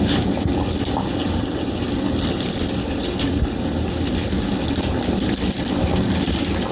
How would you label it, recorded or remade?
recorded